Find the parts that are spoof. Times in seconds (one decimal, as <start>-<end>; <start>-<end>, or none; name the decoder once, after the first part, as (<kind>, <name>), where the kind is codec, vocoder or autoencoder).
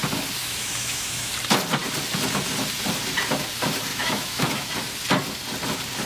0.4-1.3 (autoencoder, DAC-VAE); 3.9-4.7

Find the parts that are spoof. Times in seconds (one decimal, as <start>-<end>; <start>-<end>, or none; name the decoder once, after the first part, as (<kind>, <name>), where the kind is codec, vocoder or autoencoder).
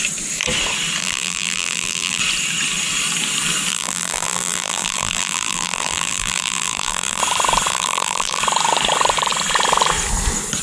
1.0-2.2 (vocoder, BigVGAN v2); 3.7-7.2; 7.7-8.4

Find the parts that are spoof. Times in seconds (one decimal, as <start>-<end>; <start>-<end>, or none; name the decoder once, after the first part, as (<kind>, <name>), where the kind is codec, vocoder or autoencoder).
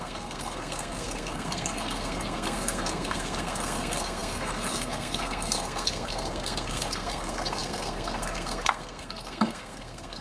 0.0-10.2 (codec, SNAC)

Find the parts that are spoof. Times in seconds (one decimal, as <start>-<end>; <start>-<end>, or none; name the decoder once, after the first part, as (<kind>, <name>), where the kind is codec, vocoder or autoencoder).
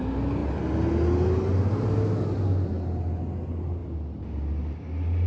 none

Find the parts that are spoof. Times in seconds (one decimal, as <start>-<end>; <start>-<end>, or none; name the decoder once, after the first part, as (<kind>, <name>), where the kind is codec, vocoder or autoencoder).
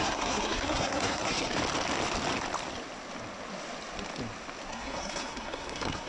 0.0-1.5 (codec, SNAC); 4.7-6.1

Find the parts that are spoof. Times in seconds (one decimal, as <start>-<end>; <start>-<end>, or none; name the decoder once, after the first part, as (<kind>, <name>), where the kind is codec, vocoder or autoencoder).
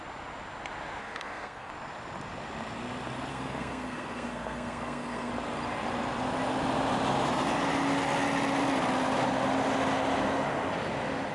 1.0-1.7 (codec, SNAC); 3.3-5.3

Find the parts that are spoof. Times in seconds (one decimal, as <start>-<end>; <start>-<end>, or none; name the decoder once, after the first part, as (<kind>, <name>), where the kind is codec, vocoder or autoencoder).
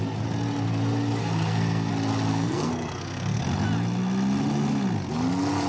1.2-1.9 (codec, SNAC); 2.3-3.4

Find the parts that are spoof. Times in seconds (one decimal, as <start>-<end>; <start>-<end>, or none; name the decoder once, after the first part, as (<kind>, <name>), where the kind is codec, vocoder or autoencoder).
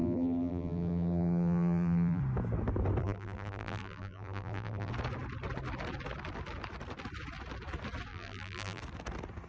0.0-2.2 (vocoder, BigVGAN v2); 3.0-4.9; 8.1-8.8